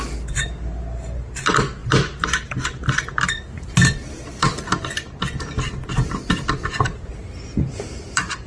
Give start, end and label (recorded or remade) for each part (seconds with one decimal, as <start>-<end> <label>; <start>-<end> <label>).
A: 0.0-8.5 recorded